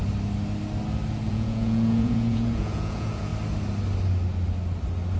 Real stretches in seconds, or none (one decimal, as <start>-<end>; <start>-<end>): 0.0-1.3; 3.3-5.2